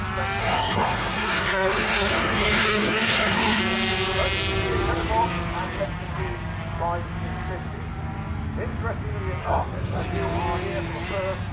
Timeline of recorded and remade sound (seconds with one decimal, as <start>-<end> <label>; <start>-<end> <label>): 0.0-0.4 recorded; 0.4-3.6 remade; 3.6-9.4 recorded; 9.4-10.0 remade; 10.0-11.5 recorded